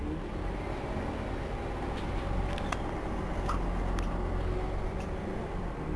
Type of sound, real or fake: real